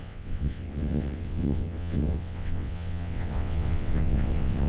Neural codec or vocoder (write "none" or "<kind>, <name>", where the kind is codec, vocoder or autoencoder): vocoder, WaveNeXt